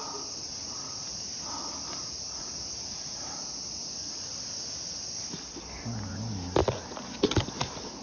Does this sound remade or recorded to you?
recorded